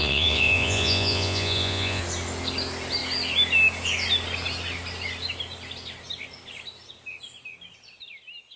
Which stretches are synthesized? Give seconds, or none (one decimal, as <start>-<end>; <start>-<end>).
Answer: 0.0-2.0